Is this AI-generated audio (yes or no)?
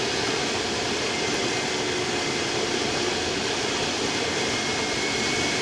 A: no